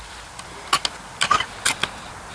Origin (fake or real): real